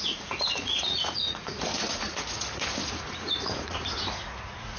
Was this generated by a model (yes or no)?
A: yes